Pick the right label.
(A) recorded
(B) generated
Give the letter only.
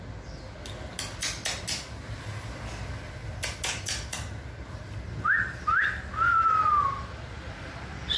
A